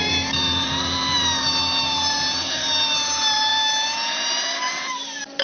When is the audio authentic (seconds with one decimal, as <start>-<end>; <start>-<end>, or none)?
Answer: none